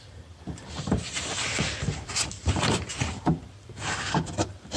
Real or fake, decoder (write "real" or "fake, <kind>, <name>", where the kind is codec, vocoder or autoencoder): fake, vocoder, BigVGAN v2